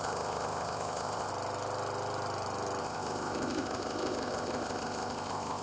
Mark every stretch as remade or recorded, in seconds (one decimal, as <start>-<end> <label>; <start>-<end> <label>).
0.0-1.3 remade; 1.3-2.8 recorded; 2.8-5.6 remade

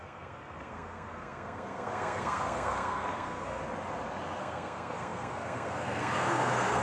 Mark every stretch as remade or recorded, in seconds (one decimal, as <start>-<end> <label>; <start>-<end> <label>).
0.0-3.6 remade; 3.6-4.4 recorded; 4.4-6.8 remade

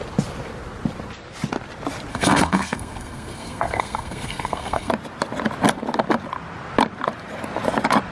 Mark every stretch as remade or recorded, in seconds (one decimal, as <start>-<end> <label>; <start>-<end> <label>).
0.0-2.1 recorded; 2.1-4.9 remade; 4.9-8.1 recorded

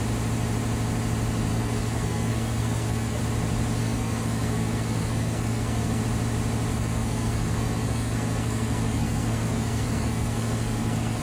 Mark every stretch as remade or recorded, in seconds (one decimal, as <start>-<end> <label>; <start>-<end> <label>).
0.0-1.5 recorded; 1.5-3.2 remade; 3.2-3.8 recorded; 3.8-6.0 remade; 6.0-6.7 recorded; 6.7-11.2 remade

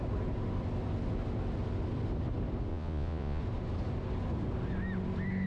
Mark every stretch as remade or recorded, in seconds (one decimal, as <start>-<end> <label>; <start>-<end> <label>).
0.0-2.7 recorded; 2.7-3.4 remade; 3.4-5.5 recorded